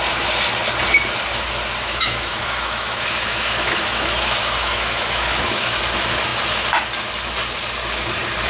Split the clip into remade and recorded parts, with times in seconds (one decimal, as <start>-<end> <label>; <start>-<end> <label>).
0.0-1.8 recorded; 1.8-5.8 remade; 5.8-8.5 recorded